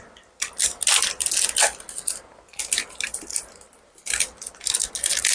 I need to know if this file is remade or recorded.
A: recorded